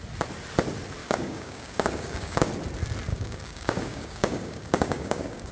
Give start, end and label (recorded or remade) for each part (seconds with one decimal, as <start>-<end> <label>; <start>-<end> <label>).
0.0-1.0 recorded; 1.0-2.5 remade; 2.5-3.1 recorded; 3.1-5.5 remade